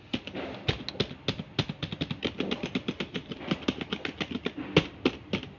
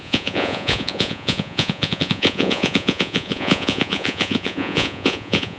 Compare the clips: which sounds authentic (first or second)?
first